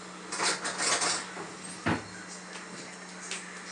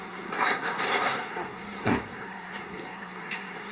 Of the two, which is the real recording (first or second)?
first